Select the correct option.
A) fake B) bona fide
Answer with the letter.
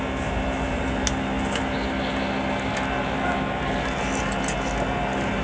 B